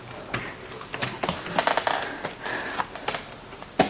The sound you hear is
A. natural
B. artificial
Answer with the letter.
A